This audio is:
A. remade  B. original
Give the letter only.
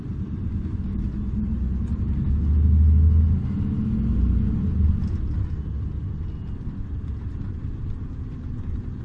B